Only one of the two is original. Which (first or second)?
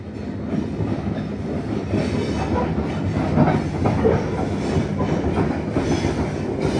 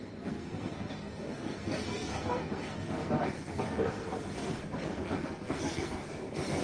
first